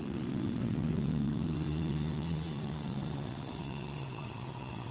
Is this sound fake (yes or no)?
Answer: yes